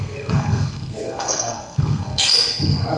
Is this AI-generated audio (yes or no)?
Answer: yes